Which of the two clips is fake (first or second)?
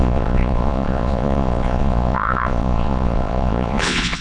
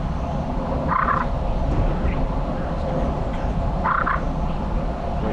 first